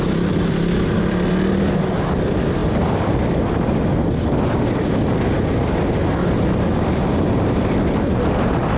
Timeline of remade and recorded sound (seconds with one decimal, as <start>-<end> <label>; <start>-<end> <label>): 0.0-2.6 recorded; 2.6-3.1 remade; 3.1-8.8 recorded